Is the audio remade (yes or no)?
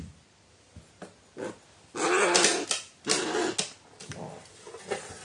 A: no